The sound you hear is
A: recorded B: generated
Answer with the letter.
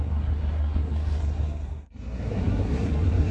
B